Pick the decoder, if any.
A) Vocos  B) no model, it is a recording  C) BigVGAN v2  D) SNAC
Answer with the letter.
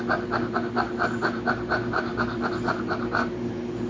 B